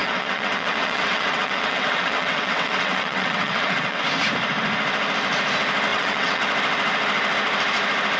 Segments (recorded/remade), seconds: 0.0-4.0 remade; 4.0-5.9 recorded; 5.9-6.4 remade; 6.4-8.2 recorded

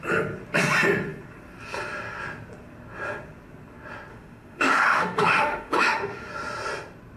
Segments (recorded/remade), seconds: 0.0-4.1 recorded; 4.1-6.3 remade; 6.3-7.2 recorded

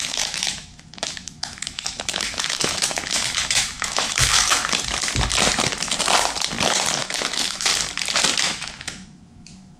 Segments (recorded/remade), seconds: 0.0-4.6 remade; 4.6-7.0 recorded; 7.0-7.7 remade; 7.7-8.4 recorded; 8.4-9.8 remade

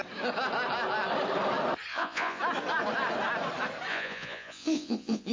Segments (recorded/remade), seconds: 0.0-1.9 recorded; 1.9-2.4 remade; 2.4-3.9 recorded; 3.9-5.3 remade

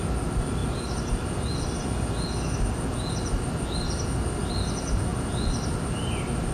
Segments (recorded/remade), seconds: 0.0-6.5 recorded